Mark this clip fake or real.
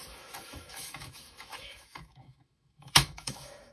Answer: fake